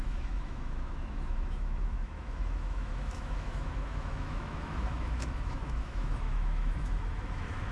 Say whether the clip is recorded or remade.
remade